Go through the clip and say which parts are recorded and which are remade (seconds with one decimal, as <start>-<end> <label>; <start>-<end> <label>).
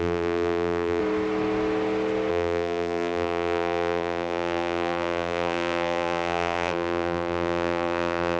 0.0-1.0 remade; 1.0-2.3 recorded; 2.3-8.4 remade